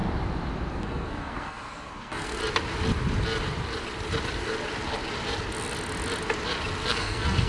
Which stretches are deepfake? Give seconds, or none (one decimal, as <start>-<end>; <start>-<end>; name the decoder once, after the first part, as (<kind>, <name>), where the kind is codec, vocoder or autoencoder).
0.7-2.4 (codec, SNAC); 6.9-7.5

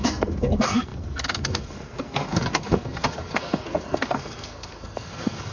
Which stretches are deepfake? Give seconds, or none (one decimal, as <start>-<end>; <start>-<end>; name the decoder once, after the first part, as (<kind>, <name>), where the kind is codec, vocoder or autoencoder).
0.0-5.5 (codec, SNAC)

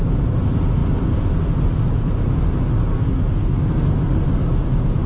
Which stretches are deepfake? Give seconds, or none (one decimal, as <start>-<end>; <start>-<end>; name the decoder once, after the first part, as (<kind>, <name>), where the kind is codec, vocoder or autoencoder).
2.9-3.9 (codec, SNAC)